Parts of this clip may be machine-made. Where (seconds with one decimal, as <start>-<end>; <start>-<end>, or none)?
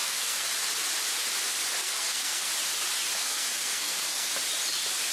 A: 0.0-0.5; 1.8-2.5; 3.2-4.3